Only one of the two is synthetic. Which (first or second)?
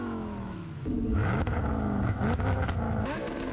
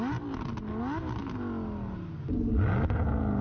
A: first